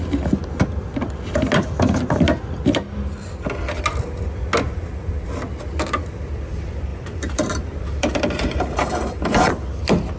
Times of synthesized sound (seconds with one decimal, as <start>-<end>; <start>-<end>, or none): 1.4-2.0; 6.9-9.2